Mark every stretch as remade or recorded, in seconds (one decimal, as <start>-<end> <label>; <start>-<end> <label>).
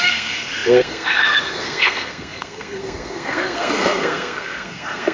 0.0-5.1 remade